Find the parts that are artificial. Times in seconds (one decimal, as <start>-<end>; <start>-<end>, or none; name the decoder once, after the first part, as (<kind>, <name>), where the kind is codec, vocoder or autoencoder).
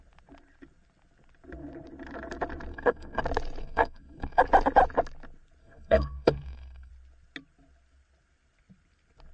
2.7-3.2 (codec, SNAC); 3.6-4.4; 5.6-6.9